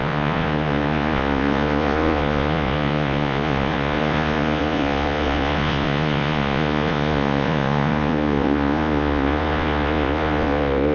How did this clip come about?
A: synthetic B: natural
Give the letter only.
A